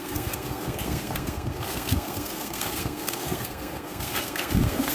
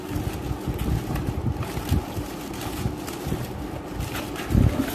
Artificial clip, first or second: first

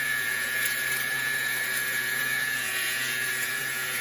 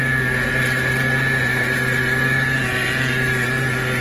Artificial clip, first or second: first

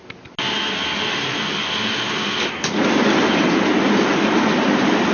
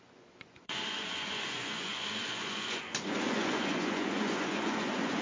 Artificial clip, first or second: second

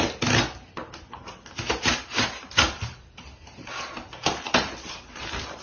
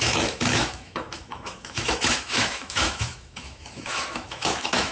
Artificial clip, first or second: second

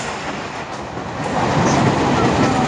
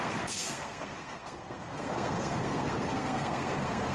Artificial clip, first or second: second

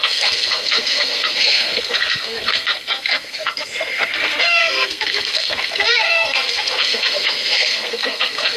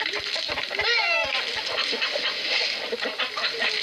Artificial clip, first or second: first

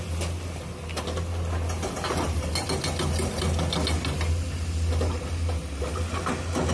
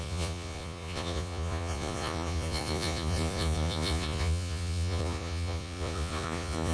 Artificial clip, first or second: second